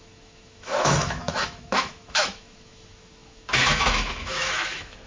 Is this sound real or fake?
fake